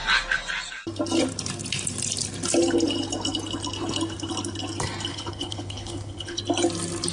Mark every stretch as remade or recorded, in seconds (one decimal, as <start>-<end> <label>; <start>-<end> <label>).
0.0-5.1 recorded; 5.1-6.4 remade; 6.4-7.1 recorded